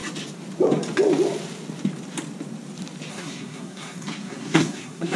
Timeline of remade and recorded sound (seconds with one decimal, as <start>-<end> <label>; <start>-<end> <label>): 0.0-3.1 recorded; 3.1-5.2 remade